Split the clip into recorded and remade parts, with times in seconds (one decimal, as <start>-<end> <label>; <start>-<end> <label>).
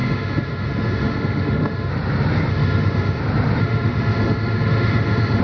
0.0-1.9 remade; 1.9-2.5 recorded; 2.5-3.2 remade; 3.2-3.6 recorded; 3.6-5.4 remade